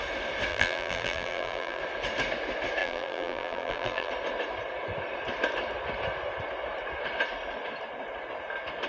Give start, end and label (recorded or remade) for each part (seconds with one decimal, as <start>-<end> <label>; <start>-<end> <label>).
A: 0.0-0.5 recorded; 0.5-1.8 remade; 1.8-2.8 recorded; 2.8-4.1 remade; 4.1-8.9 recorded